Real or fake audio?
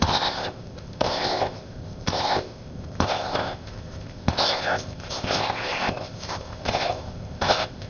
fake